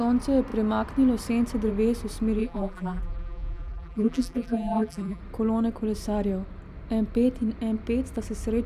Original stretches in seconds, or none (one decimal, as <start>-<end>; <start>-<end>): 0.0-2.4; 5.2-8.7